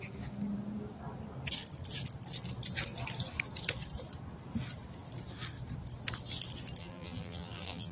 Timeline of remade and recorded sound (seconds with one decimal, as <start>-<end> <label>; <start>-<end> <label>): 0.0-6.8 recorded; 6.8-7.9 remade